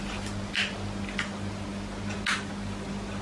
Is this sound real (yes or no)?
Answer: yes